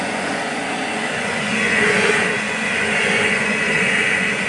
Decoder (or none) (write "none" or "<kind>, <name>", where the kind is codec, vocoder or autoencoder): vocoder, Vocos